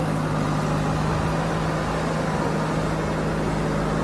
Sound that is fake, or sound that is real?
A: real